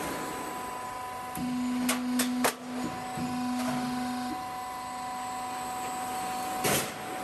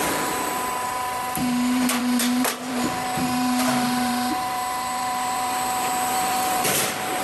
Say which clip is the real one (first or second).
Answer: first